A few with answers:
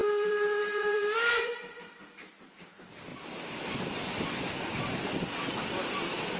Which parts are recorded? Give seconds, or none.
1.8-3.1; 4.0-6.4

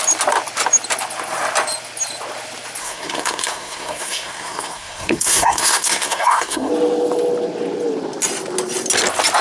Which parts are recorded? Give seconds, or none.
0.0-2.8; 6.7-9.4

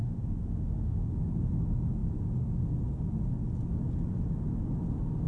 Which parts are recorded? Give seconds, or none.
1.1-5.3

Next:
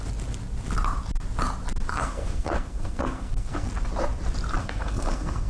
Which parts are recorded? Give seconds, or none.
0.0-1.9; 3.7-4.6

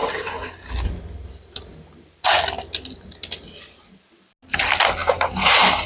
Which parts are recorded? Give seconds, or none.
0.7-5.0

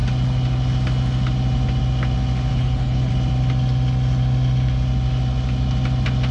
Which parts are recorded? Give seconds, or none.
0.0-2.5; 3.1-6.3

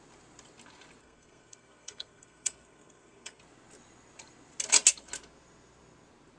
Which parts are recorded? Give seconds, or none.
0.0-1.0; 3.4-6.4

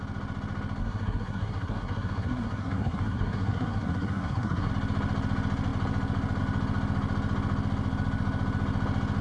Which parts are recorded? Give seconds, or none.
0.0-0.8; 4.7-9.2